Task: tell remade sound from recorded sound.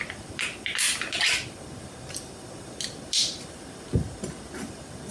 recorded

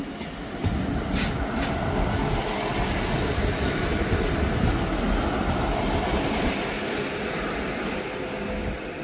recorded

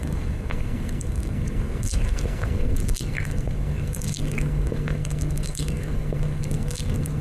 remade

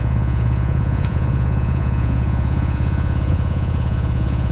remade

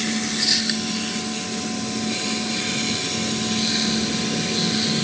recorded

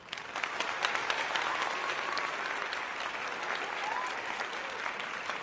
recorded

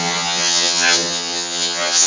remade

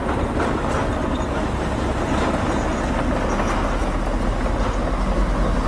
recorded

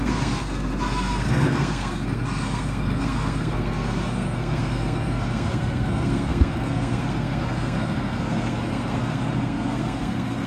remade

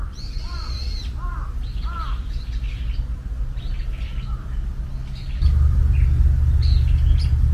recorded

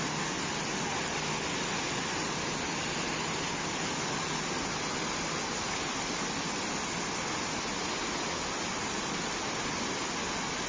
recorded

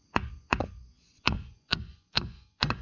remade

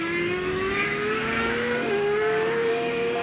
remade